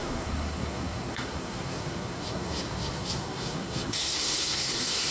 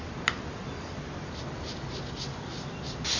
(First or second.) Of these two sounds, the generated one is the first